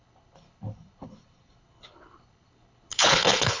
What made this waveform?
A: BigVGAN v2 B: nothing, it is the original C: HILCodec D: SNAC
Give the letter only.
C